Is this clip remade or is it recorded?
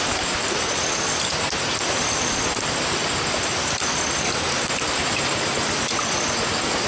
recorded